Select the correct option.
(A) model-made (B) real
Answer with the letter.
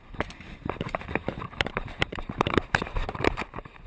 A